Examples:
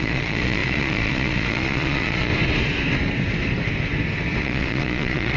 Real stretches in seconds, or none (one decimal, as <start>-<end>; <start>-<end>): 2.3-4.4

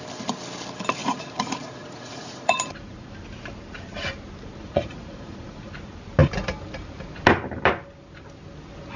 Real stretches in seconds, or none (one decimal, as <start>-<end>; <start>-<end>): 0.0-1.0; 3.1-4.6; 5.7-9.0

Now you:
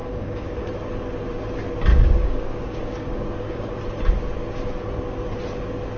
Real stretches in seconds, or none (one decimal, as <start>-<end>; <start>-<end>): 0.7-1.9; 3.8-6.0

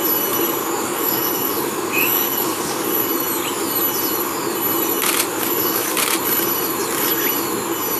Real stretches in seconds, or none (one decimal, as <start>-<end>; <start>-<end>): 0.0-0.6; 3.0-5.3; 6.0-8.0

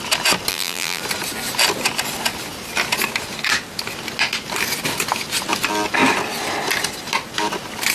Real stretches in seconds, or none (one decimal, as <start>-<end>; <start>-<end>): 0.0-0.5; 1.0-7.9

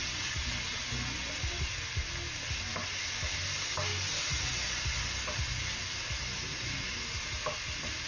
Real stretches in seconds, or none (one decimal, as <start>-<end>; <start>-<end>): 0.0-8.1

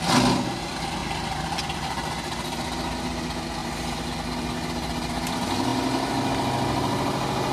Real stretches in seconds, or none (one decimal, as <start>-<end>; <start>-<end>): 0.0-1.0; 1.6-7.5

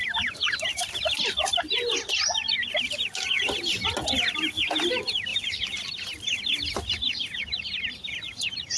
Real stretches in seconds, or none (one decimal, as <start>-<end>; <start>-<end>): 0.0-5.3; 5.9-8.8